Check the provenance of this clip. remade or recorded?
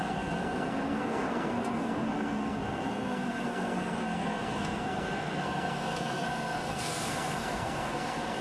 remade